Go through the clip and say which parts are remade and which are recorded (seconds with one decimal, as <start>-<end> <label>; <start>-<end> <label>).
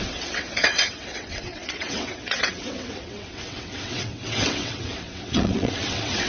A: 0.0-6.3 remade